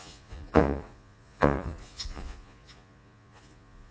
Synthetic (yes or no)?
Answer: yes